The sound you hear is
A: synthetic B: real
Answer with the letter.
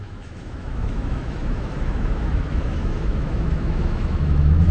A